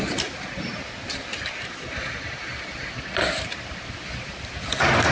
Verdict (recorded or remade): recorded